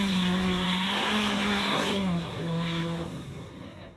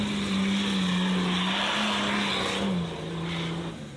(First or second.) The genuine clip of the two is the second